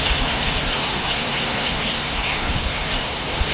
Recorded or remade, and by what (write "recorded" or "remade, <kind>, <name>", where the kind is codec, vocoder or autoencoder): remade, codec, SNAC